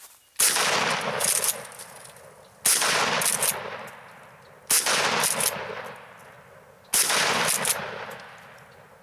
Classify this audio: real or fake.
real